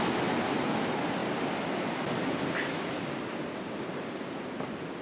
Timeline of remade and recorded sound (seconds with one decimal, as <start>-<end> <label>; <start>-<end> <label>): 0.0-5.0 recorded